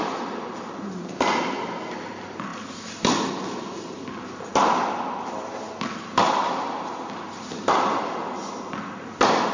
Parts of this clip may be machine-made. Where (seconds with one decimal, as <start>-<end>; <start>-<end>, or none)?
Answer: none